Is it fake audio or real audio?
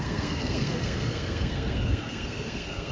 fake